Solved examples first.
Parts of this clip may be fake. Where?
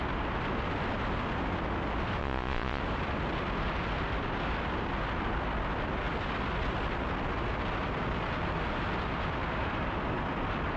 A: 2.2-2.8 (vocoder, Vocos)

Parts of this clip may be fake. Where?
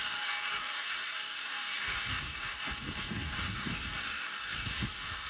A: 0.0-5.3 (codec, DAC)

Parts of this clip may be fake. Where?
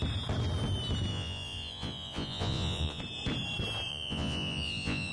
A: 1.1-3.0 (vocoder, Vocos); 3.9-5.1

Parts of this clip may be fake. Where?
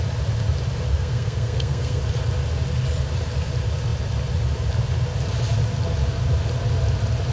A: 0.9-2.0 (codec, SNAC)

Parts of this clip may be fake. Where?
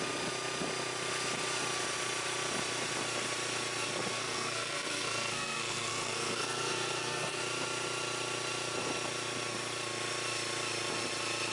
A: 4.1-7.4 (codec, SNAC)